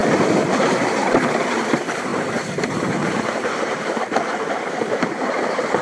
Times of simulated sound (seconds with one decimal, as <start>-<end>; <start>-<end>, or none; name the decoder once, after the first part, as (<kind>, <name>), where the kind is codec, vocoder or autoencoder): 0.0-1.6 (vocoder, BigVGAN v2); 2.1-5.8